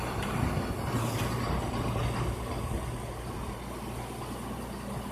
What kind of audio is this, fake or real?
real